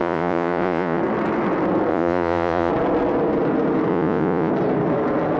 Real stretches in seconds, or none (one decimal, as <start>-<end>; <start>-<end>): 1.0-1.9; 2.7-3.9; 4.5-5.4